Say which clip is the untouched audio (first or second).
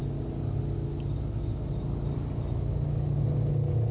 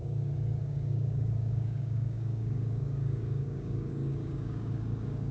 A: first